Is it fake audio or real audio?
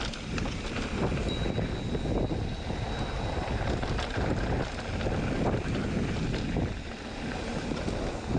real